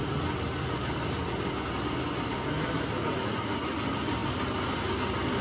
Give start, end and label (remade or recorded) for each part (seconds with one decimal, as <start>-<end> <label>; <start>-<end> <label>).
0.0-5.4 recorded